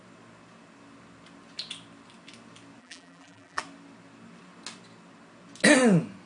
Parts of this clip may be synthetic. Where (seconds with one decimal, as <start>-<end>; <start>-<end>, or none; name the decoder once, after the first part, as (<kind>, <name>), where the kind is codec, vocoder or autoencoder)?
2.8-3.6 (vocoder, BigVGAN v2)